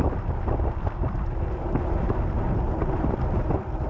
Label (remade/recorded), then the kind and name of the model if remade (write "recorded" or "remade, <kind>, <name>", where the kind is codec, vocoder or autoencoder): recorded